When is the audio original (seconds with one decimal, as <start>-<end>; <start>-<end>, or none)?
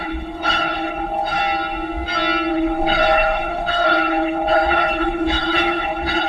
1.4-2.5